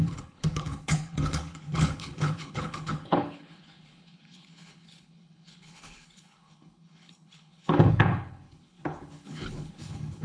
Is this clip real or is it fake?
fake